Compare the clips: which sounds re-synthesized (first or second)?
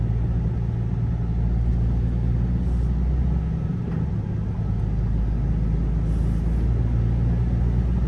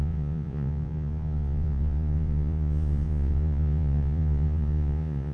second